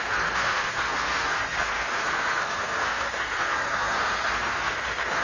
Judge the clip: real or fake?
fake